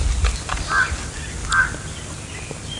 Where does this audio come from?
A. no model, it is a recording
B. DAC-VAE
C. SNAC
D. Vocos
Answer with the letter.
A